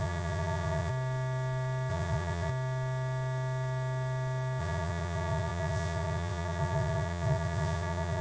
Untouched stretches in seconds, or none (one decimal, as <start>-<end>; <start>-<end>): 0.9-1.9; 2.5-4.6